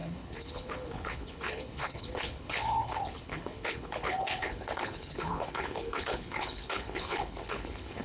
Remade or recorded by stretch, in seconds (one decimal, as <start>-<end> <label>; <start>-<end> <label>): 0.0-8.0 remade